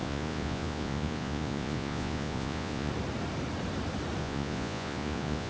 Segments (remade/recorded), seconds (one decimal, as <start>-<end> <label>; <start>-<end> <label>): 0.0-2.9 remade; 2.9-4.2 recorded; 4.2-5.5 remade